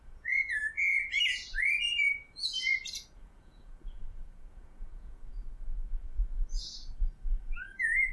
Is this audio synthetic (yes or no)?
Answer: yes